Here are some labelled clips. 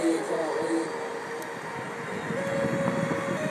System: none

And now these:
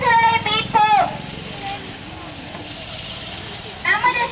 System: none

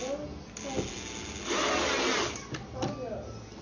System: none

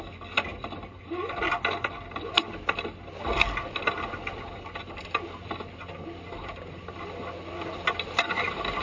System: none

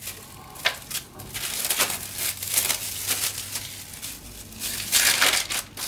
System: none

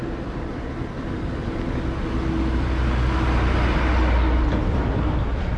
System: none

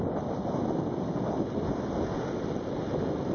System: none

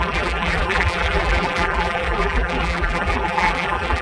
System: vocoder, BigVGAN v2